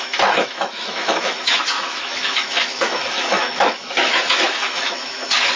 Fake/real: fake